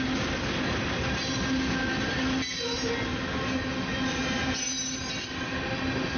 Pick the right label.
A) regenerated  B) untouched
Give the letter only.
B